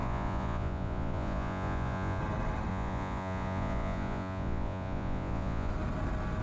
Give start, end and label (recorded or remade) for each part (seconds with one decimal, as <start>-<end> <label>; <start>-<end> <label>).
0.0-2.2 remade; 2.2-2.7 recorded; 2.7-5.7 remade; 5.7-6.4 recorded